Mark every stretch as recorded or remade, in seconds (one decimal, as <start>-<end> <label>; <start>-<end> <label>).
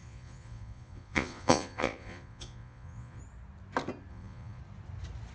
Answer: 0.0-3.2 remade; 3.2-4.1 recorded; 4.1-4.6 remade; 4.6-5.3 recorded